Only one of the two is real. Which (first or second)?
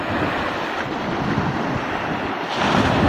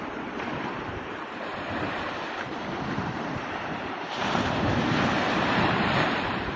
first